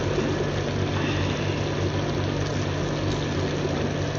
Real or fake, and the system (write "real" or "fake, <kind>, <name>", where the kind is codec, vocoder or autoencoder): real